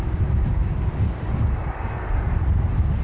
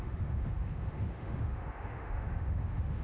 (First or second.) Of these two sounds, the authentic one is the first